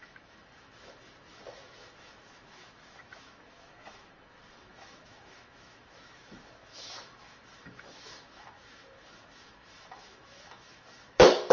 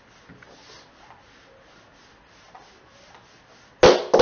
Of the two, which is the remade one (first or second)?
first